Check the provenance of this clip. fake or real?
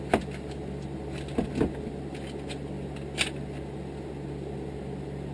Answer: real